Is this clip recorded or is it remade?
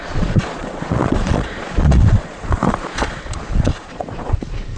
remade